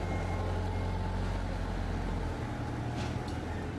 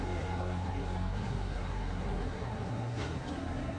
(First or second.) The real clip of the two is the first